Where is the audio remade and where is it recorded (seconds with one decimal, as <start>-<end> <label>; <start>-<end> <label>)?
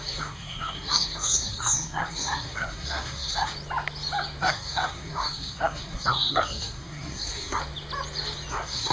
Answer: 0.0-3.5 remade; 3.5-4.4 recorded; 4.4-7.6 remade; 7.6-8.5 recorded; 8.5-8.9 remade